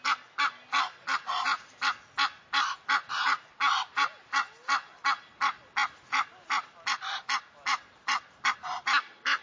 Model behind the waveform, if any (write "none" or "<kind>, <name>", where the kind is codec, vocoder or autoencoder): none